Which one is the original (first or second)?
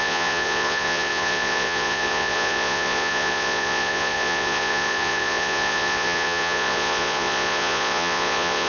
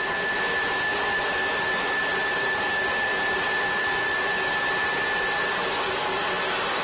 second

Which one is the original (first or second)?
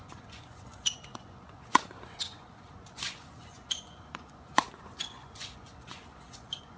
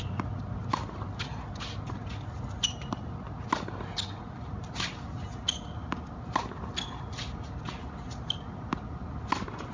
second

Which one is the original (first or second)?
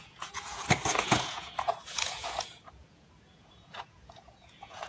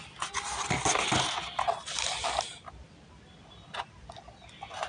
second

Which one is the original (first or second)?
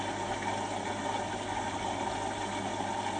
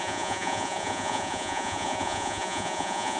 first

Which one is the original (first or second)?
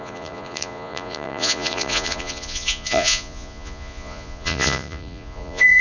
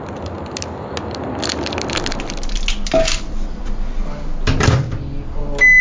second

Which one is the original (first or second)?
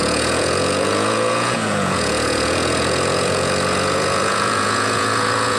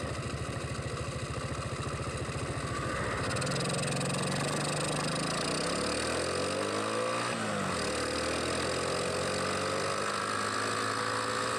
second